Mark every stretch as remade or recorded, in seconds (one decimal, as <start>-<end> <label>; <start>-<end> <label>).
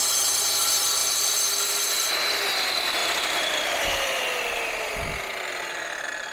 0.0-1.0 recorded; 1.0-2.3 remade; 2.3-3.0 recorded; 3.0-4.2 remade; 4.2-6.3 recorded